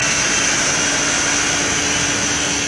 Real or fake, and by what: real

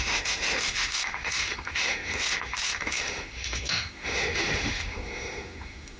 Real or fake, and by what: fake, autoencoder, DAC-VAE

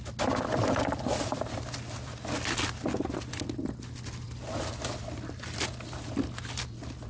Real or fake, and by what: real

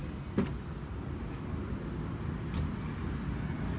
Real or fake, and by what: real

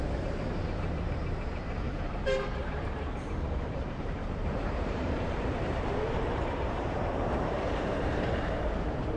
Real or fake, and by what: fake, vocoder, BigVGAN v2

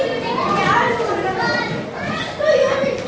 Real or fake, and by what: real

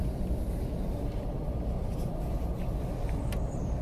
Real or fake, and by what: real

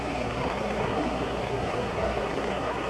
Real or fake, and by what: fake, codec, SNAC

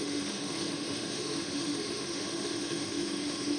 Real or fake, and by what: fake, autoencoder, DAC-VAE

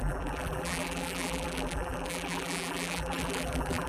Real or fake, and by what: fake, vocoder, BigVGAN v2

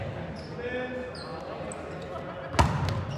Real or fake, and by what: real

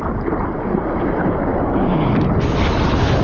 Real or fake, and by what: real